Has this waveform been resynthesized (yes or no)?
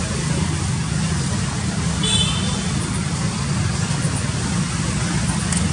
no